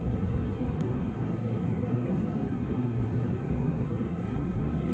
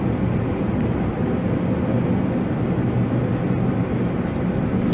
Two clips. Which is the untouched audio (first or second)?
second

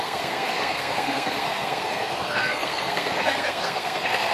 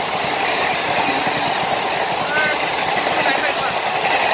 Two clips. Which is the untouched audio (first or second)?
second